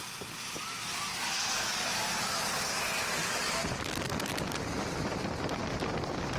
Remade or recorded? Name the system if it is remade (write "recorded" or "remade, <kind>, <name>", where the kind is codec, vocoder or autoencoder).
recorded